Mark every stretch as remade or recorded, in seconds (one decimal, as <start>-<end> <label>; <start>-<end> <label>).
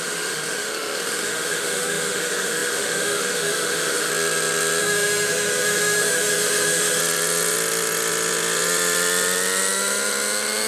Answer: 0.0-4.1 remade; 4.1-4.8 recorded; 4.8-7.0 remade; 7.0-10.7 recorded